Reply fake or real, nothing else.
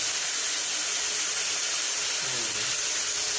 real